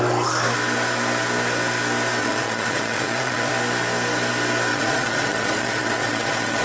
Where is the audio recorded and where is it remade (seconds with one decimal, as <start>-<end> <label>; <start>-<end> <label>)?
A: 0.0-2.2 recorded; 2.2-3.5 remade; 3.5-4.7 recorded; 4.7-6.6 remade